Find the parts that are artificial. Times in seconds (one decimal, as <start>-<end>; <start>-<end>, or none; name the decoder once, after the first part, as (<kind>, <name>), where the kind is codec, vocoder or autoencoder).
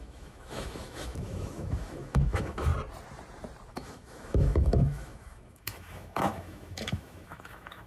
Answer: 0.0-2.7 (autoencoder, DAC-VAE); 3.7-7.9